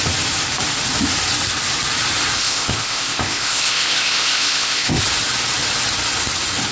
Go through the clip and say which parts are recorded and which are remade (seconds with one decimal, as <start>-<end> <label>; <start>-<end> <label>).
0.0-2.4 recorded; 2.4-5.0 remade; 5.0-6.7 recorded